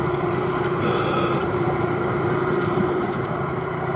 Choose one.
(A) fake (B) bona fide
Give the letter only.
A